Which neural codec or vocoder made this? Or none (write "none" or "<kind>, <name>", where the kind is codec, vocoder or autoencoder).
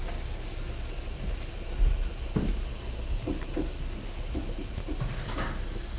none